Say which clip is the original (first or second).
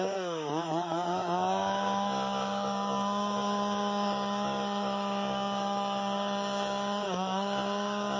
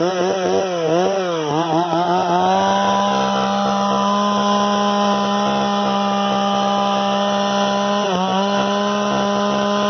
second